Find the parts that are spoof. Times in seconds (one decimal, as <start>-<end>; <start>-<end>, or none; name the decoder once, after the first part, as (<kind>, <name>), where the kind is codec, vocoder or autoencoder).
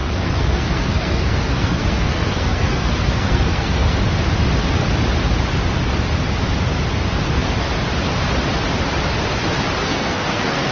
0.0-4.0 (codec, SNAC); 9.8-10.7